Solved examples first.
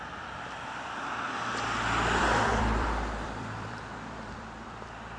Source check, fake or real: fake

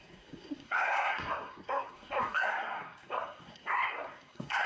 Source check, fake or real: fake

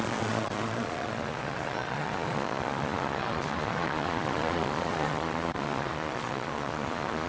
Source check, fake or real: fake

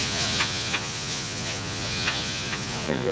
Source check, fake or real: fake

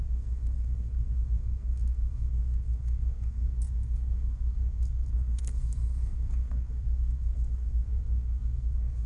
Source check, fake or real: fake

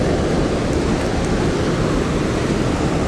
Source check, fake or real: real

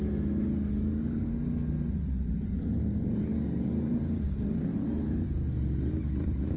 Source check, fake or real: real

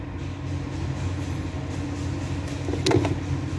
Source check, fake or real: real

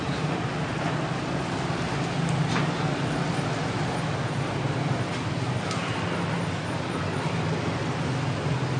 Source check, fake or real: real